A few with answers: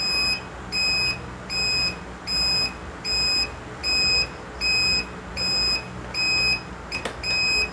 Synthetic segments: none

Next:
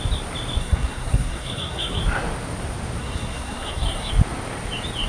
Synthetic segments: 0.6-2.0; 3.0-4.1

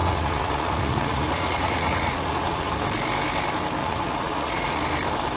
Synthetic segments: 0.0-2.7; 3.8-4.8

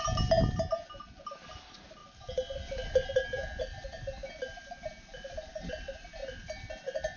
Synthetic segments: none

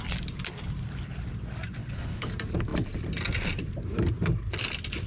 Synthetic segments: 1.8-2.3

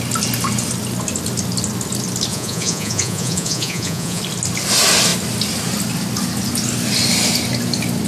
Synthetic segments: 2.3-4.2

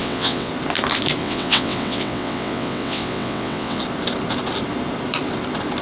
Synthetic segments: 0.0-0.5; 1.2-3.8

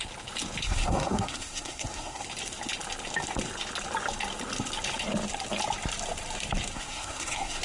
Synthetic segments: 0.6-2.2; 6.7-7.6